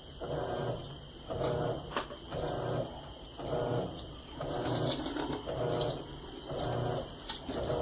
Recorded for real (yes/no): yes